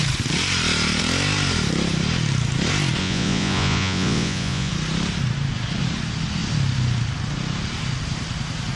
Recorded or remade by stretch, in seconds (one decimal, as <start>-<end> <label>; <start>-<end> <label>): 0.0-3.0 recorded; 3.0-4.7 remade; 4.7-8.8 recorded